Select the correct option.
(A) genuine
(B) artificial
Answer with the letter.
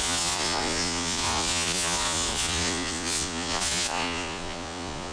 B